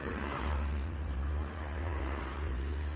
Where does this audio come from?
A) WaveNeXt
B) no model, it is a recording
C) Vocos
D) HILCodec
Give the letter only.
C